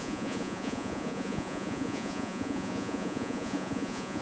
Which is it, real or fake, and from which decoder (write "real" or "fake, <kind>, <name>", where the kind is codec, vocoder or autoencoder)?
fake, vocoder, Vocos